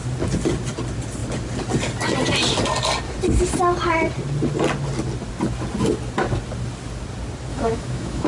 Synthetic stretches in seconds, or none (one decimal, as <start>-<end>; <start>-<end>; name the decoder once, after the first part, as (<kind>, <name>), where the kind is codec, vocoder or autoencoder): 7.5-8.3 (autoencoder, DAC-VAE)